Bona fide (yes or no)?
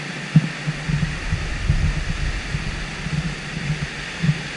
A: yes